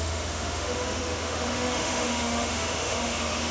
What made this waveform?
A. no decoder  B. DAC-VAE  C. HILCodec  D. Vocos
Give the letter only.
B